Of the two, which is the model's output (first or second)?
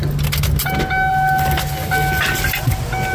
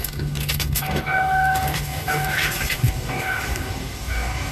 second